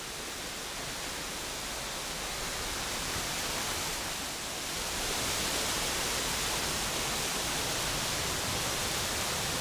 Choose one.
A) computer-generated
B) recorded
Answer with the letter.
A